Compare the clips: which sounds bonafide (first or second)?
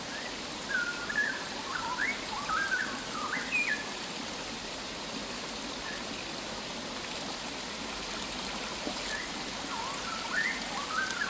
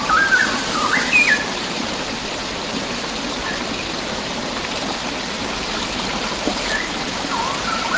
first